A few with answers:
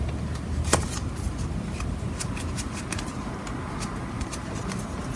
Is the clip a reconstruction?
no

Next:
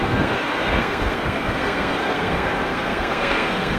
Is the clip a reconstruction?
yes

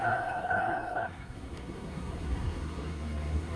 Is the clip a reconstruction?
yes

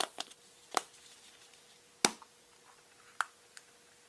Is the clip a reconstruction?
no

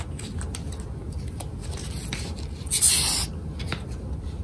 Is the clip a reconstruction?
no